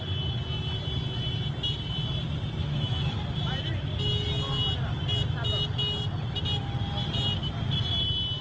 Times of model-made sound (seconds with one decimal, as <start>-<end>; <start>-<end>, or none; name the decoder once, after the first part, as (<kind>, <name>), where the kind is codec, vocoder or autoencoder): 2.6-3.2 (autoencoder, DAC-VAE)